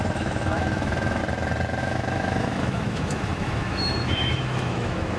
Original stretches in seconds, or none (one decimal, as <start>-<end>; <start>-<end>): 1.2-1.8